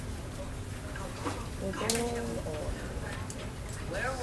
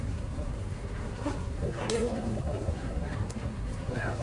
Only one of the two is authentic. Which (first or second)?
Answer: first